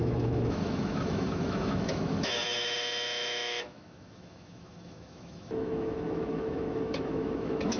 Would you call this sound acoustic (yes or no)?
no